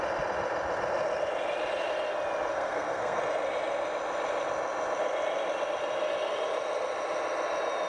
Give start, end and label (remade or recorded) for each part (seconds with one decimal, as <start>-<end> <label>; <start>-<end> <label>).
0.0-2.5 recorded; 2.5-3.2 remade; 3.2-7.9 recorded